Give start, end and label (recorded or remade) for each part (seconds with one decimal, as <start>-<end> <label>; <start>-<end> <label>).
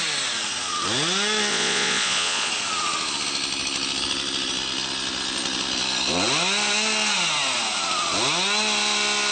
0.0-1.5 recorded; 1.5-2.5 remade; 2.5-9.3 recorded